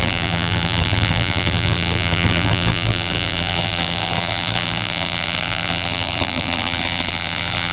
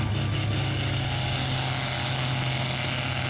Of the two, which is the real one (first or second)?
second